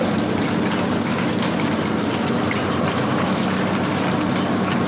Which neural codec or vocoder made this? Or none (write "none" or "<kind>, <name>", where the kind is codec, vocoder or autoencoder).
none